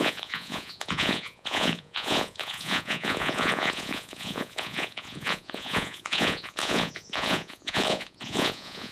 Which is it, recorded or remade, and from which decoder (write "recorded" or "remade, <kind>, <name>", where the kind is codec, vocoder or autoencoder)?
remade, vocoder, Vocos